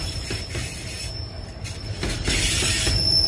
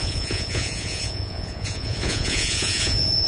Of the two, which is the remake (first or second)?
second